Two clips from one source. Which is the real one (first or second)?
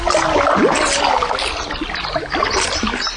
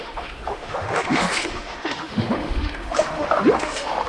first